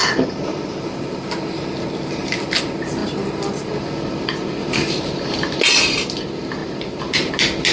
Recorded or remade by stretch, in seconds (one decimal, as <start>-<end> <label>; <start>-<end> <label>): 0.0-1.4 remade; 1.4-4.6 recorded; 4.6-5.6 remade; 5.6-6.6 recorded; 6.6-7.3 remade; 7.3-7.7 recorded

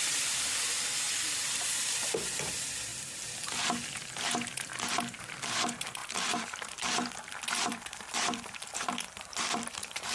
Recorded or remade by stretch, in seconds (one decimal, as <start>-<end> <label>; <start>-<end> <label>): 0.0-2.9 remade; 2.9-5.2 recorded; 5.2-10.1 remade

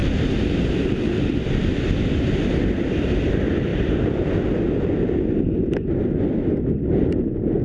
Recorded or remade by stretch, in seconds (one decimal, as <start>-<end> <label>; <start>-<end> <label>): 0.0-0.7 remade; 0.7-3.7 recorded; 3.7-4.7 remade; 4.7-7.6 recorded

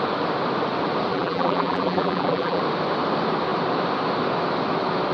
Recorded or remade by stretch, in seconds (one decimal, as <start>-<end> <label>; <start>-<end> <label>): 0.0-1.1 recorded; 1.1-2.6 remade; 2.6-5.1 recorded

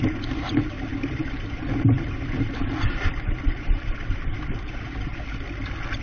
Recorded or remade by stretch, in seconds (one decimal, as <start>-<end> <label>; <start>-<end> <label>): 0.0-5.1 remade; 5.1-6.0 recorded

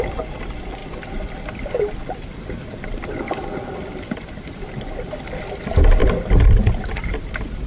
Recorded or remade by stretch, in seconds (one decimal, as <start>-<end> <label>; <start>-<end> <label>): 0.0-7.7 recorded

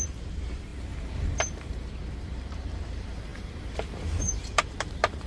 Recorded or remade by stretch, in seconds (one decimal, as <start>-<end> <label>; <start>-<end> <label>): 0.0-0.7 remade; 0.7-1.4 recorded; 1.4-5.3 remade